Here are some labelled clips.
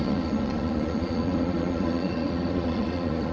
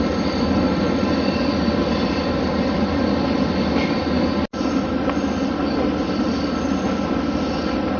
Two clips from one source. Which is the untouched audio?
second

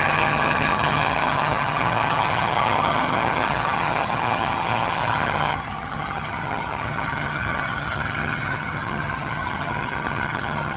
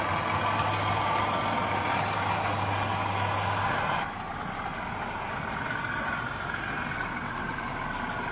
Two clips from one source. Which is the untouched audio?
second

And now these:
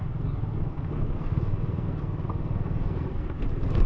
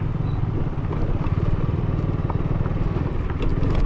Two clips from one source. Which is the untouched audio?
second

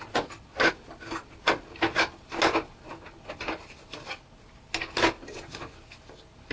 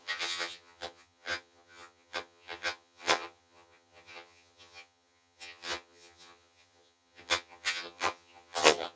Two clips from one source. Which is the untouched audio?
first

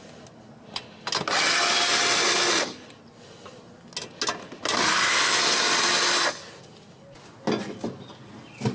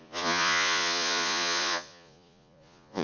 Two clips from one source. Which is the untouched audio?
first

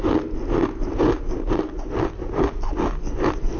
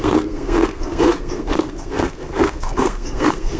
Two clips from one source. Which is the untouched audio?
first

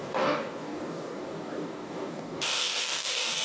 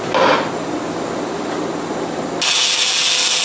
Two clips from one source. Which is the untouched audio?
second